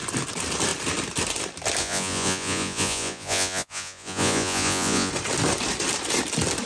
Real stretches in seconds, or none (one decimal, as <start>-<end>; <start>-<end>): 0.0-1.8; 5.1-6.7